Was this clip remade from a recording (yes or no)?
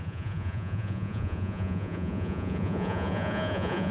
yes